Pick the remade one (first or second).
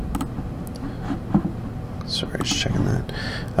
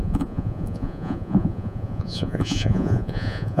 second